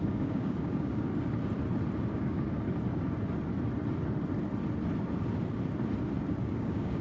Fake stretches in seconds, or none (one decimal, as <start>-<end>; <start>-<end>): 0.0-1.1; 2.1-2.5; 6.4-7.0